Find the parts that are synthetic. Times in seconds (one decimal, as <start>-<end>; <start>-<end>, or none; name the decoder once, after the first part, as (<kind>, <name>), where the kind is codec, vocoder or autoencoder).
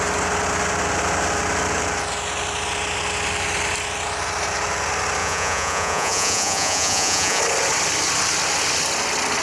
5.2-7.4 (vocoder, Vocos)